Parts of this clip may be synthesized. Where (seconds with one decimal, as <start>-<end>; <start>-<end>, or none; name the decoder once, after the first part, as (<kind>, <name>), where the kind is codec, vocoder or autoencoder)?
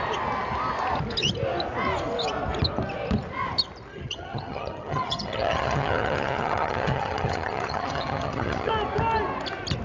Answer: 3.9-8.7 (vocoder, HiFi-GAN)